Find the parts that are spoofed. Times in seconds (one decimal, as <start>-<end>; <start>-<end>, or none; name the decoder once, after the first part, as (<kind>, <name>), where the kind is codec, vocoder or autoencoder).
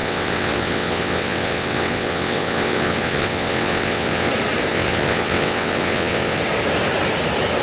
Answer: 0.0-4.3 (vocoder, WaveNeXt); 4.7-6.4